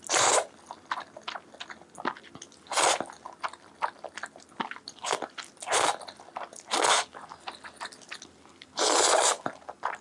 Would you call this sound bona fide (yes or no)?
yes